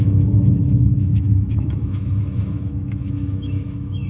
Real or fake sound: fake